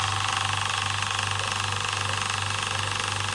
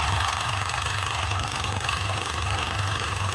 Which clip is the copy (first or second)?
second